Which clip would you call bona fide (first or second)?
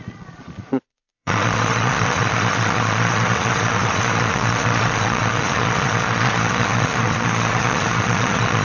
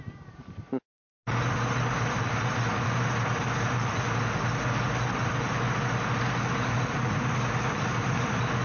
second